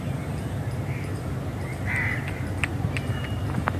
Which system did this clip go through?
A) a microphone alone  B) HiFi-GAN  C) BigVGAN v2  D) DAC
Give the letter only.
C